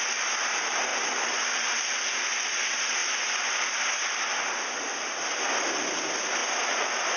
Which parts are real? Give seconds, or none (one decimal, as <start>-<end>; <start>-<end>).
0.0-0.9; 1.8-6.4